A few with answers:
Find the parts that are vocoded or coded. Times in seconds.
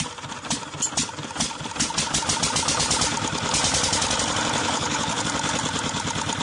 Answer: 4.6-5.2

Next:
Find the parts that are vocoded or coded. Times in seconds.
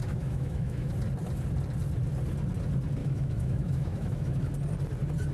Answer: 0.0-0.9; 3.0-4.5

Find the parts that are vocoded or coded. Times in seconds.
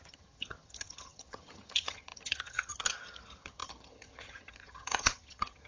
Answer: 0.0-5.7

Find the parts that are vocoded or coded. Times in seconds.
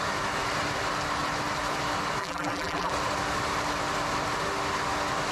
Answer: 2.2-2.9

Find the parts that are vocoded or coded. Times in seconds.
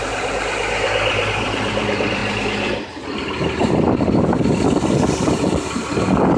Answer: 0.0-2.2; 6.0-6.4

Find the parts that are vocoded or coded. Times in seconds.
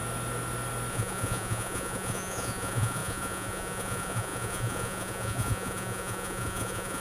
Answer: 0.9-7.0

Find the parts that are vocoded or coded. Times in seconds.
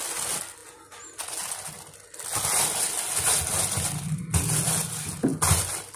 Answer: none